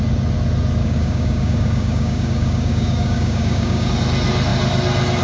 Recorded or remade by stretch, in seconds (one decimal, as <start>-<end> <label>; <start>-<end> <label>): 0.0-0.8 recorded; 0.8-3.9 remade; 3.9-5.2 recorded